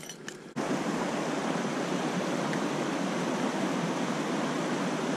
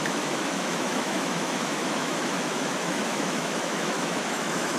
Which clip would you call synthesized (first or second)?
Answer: second